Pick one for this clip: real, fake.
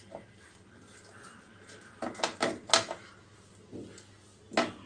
real